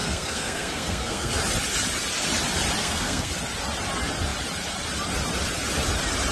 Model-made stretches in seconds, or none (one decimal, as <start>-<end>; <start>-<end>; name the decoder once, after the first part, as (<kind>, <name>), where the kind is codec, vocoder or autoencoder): 0.0-1.4 (codec, SNAC); 2.8-3.3